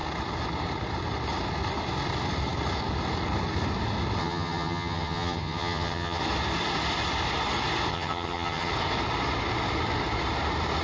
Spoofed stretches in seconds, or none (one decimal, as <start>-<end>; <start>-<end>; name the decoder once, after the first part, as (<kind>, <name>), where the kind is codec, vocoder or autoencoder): 4.2-6.2 (vocoder, HiFi-GAN); 7.9-8.7